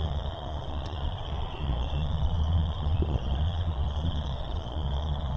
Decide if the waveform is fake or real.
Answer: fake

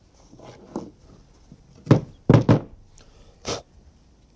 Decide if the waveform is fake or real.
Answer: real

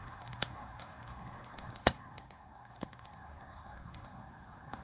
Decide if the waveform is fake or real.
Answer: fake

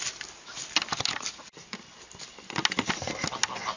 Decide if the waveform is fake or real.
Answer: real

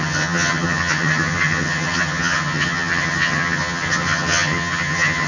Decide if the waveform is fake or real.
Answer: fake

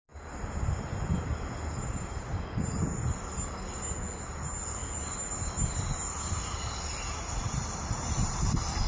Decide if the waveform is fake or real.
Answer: real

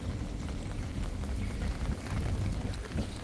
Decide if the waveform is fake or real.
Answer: real